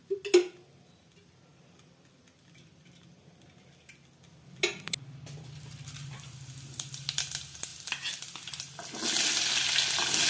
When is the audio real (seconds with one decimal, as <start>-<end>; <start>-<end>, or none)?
0.0-10.3